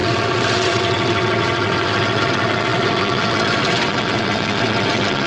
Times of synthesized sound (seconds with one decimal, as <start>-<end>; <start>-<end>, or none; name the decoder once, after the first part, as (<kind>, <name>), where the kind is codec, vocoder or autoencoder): 0.0-5.3 (vocoder, WaveNeXt)